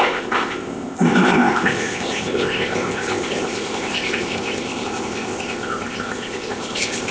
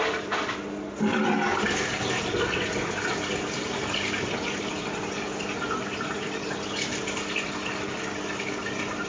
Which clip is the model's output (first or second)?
first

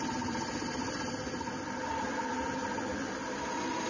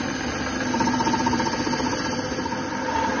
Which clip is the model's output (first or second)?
first